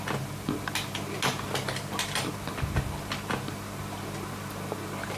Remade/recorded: recorded